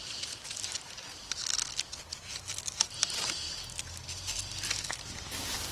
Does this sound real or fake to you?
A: real